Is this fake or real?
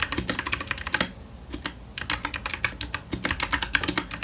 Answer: real